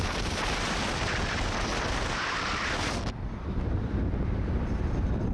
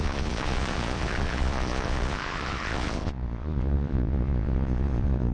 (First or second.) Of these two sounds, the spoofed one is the second